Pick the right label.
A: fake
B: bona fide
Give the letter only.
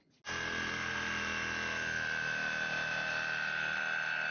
B